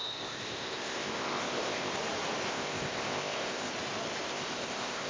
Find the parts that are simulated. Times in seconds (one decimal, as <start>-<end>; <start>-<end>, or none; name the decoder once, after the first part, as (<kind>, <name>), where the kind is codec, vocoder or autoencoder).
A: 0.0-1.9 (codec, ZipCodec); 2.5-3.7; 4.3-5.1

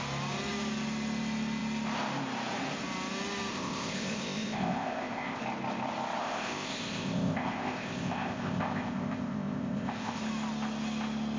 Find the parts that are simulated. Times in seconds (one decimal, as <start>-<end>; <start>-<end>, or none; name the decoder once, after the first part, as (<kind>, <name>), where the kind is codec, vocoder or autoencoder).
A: 3.5-5.4 (codec, ZipCodec); 6.2-10.2

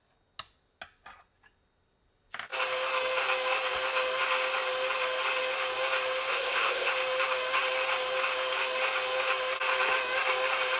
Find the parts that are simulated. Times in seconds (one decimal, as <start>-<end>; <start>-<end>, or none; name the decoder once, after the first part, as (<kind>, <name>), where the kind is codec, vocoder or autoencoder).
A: 6.3-6.9 (codec, ZipCodec)